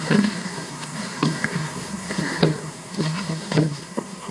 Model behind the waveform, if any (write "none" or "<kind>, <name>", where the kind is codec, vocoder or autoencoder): codec, SNAC